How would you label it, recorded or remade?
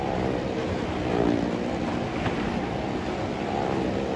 recorded